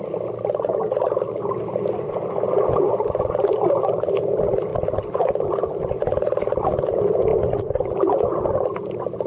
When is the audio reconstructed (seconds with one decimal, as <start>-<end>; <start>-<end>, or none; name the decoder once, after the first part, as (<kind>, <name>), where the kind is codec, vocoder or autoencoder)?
none